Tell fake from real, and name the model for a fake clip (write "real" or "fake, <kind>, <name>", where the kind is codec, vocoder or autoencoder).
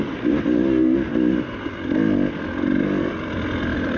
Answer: real